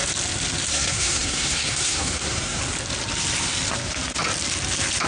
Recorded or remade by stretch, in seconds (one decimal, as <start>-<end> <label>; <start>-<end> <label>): 0.0-0.7 recorded; 0.7-2.6 remade; 2.6-5.1 recorded